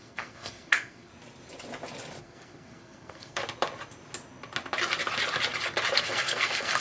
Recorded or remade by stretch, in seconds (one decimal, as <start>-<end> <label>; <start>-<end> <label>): 0.0-1.1 remade; 1.1-2.2 recorded; 2.2-3.4 remade; 3.4-6.0 recorded; 6.0-6.8 remade